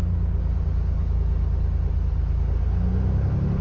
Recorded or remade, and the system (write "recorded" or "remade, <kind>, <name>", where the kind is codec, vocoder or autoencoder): recorded